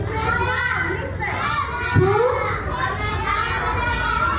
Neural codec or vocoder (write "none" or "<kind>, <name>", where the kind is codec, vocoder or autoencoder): none